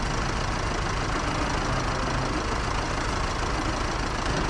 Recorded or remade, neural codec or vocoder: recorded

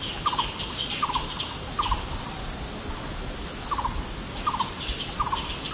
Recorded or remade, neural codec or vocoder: recorded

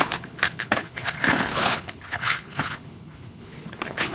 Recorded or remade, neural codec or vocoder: remade, codec, HILCodec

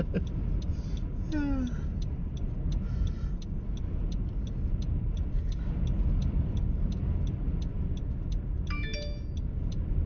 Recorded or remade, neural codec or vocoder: recorded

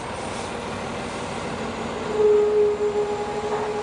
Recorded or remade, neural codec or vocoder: recorded